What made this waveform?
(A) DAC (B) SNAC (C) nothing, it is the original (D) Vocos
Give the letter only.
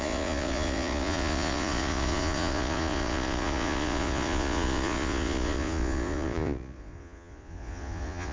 D